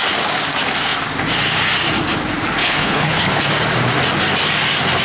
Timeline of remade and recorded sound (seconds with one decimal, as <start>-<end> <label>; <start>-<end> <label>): 0.0-2.6 recorded; 2.6-3.4 remade; 3.4-5.0 recorded